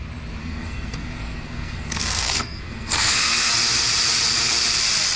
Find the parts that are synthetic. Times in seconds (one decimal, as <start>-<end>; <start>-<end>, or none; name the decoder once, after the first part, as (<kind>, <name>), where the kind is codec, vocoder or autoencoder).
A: 0.4-3.5 (codec, SNAC)

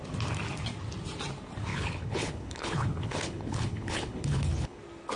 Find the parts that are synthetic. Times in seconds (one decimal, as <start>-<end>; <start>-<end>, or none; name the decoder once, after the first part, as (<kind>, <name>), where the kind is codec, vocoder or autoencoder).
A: 1.7-4.8 (codec, HILCodec)

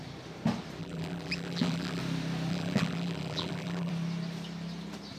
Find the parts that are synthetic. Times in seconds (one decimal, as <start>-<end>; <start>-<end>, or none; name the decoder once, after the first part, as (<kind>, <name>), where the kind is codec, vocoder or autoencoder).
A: 0.8-2.0 (vocoder, BigVGAN v2); 2.5-3.9

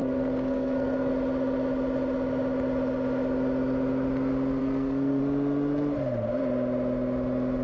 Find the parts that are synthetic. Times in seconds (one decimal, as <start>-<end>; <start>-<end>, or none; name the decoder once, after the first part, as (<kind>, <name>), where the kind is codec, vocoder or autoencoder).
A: 0.0-1.1 (codec, SNAC); 4.6-5.2

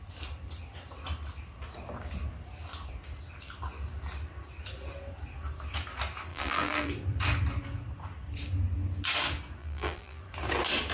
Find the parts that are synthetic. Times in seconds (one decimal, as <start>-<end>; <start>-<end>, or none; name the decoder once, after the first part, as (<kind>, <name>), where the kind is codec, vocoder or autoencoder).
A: 6.3-6.9 (vocoder, BigVGAN v2); 9.6-10.2

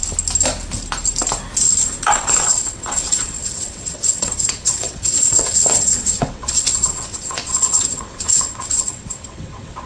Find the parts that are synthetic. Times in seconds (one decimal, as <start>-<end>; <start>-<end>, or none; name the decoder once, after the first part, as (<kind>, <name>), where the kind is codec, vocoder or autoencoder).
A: 2.1-9.9 (vocoder, WaveNeXt)

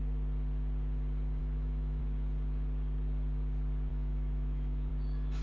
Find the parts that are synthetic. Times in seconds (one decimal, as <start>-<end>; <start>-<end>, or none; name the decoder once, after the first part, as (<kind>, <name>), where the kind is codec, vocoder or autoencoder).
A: 1.4-2.0 (autoencoder, DAC-VAE); 3.9-4.9

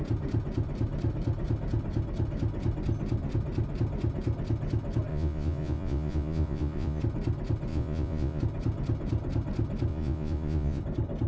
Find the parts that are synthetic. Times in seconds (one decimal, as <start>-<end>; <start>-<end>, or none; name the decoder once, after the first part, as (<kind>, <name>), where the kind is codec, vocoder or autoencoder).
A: 5.1-7.0 (vocoder, Vocos); 7.7-8.4; 9.9-10.8